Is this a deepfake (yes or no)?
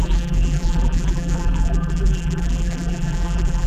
yes